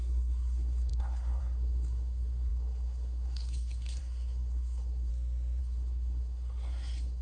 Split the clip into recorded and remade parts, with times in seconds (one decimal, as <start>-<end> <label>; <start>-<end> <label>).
0.0-5.1 remade; 5.1-5.6 recorded; 5.6-7.2 remade